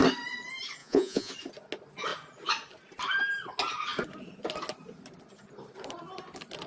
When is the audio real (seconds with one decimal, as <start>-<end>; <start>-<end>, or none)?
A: 0.0-0.8; 1.3-6.7